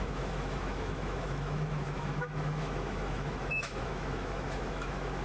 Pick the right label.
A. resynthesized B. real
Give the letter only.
A